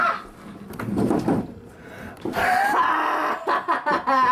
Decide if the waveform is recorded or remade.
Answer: recorded